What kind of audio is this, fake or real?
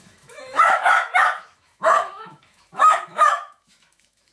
fake